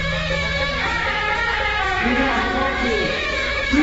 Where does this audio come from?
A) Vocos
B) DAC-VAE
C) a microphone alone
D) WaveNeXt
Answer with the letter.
B